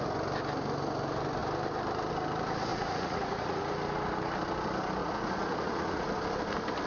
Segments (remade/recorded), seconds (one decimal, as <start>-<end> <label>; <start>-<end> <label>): 0.0-2.7 recorded; 2.7-3.6 remade; 3.6-5.0 recorded; 5.0-6.1 remade; 6.1-6.9 recorded